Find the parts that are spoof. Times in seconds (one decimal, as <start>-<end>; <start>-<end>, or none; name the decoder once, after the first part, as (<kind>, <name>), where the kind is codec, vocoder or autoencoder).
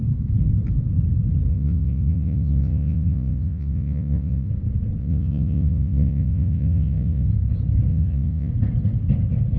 1.5-4.5 (vocoder, Vocos); 5.0-7.3; 7.9-8.5